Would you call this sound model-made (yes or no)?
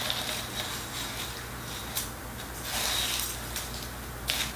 no